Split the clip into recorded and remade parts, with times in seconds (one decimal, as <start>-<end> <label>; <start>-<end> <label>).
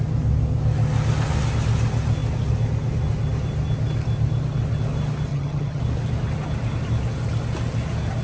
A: 0.0-5.3 recorded; 5.3-5.8 remade; 5.8-8.2 recorded